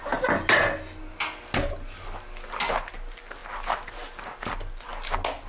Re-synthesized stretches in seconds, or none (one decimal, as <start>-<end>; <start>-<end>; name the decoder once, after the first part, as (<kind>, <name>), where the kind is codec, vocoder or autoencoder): none